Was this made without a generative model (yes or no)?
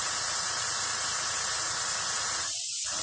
no